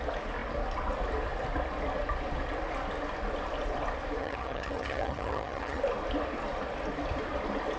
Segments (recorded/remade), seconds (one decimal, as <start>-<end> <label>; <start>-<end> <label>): 0.0-4.2 recorded; 4.2-5.8 remade; 5.8-7.8 recorded